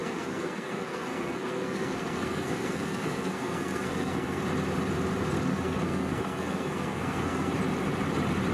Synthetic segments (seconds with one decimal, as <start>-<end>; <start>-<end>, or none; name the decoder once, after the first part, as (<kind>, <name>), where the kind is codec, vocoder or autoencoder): 0.0-4.4 (codec, SNAC); 5.5-7.5